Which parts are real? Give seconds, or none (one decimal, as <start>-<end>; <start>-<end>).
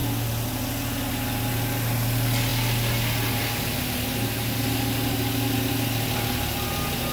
0.0-7.1